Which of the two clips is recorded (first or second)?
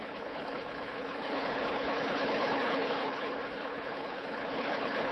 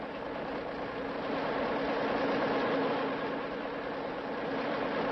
second